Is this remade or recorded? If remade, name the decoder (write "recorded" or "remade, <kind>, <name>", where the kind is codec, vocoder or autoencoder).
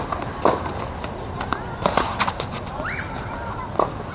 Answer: recorded